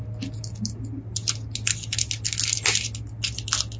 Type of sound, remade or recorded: recorded